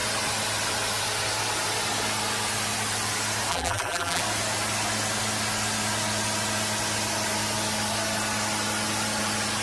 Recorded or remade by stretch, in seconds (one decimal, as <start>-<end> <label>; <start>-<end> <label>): 0.0-3.5 recorded; 3.5-4.2 remade; 4.2-9.6 recorded